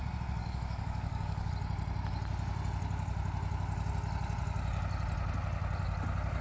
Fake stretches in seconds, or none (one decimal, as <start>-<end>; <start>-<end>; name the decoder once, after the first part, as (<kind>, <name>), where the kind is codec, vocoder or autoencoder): 0.4-1.5 (codec, DAC)